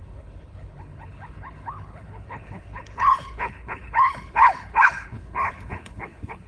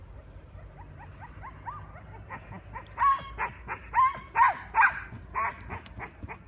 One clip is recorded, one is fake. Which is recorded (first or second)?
second